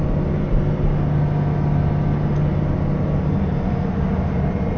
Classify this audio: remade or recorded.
recorded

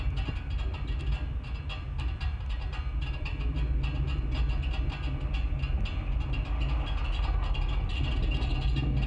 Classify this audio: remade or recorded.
recorded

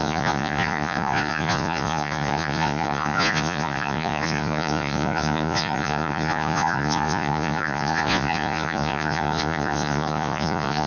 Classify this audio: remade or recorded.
remade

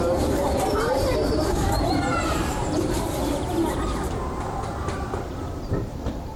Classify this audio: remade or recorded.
remade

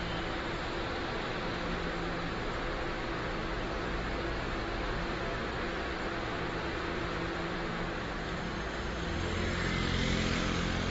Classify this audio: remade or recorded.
recorded